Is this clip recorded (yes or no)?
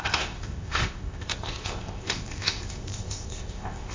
no